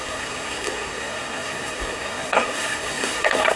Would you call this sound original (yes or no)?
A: no